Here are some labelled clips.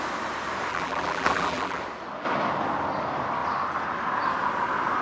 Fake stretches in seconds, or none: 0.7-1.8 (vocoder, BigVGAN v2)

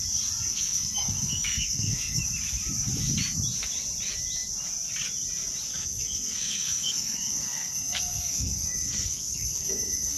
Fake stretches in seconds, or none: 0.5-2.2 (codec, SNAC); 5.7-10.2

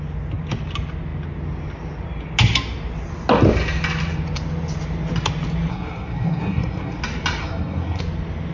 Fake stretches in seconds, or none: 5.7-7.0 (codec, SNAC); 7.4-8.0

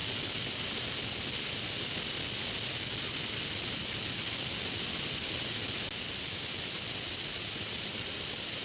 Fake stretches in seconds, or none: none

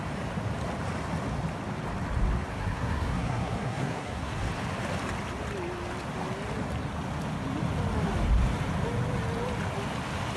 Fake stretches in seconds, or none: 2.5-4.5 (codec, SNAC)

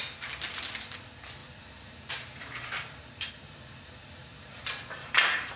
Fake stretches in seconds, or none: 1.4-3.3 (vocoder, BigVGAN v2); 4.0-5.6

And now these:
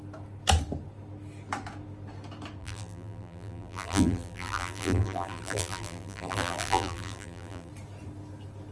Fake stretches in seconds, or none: 2.6-7.7 (vocoder, BigVGAN v2)